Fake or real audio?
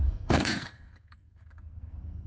fake